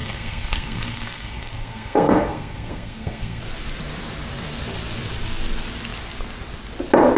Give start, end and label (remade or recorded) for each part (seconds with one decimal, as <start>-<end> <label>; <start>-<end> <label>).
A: 0.0-3.4 remade; 3.4-7.2 recorded